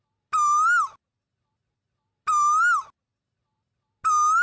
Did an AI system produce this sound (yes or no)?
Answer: no